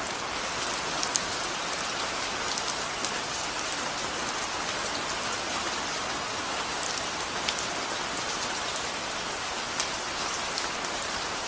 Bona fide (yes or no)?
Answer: yes